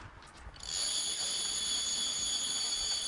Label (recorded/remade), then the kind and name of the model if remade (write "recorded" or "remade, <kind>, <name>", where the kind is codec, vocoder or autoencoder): recorded